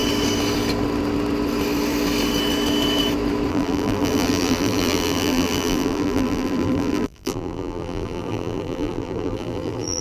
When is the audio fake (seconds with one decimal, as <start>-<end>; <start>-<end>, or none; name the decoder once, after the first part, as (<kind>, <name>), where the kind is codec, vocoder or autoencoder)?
3.5-10.0 (vocoder, BigVGAN v2)